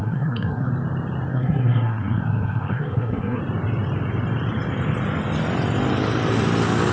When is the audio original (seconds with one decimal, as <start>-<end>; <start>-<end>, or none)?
0.7-1.3; 3.4-6.9